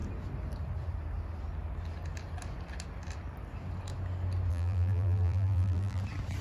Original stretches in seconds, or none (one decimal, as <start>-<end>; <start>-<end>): 0.0-4.5; 6.0-6.4